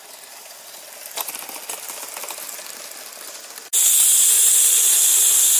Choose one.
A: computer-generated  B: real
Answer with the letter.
B